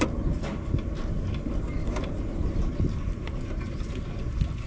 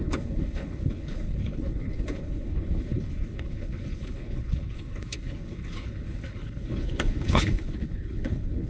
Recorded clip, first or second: first